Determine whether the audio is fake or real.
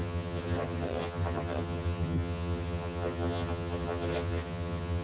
fake